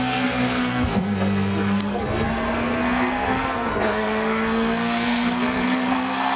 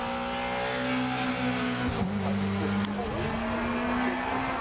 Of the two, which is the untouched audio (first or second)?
second